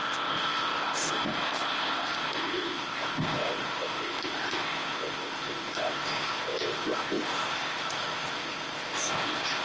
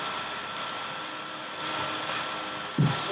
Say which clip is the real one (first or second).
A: second